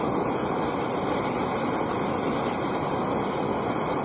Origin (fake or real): real